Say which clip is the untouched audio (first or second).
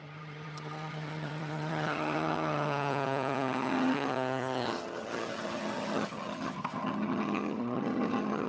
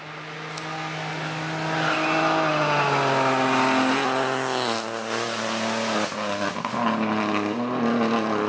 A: second